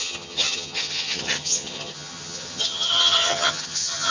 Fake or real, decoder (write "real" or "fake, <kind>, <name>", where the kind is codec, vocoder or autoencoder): fake, vocoder, HiFi-GAN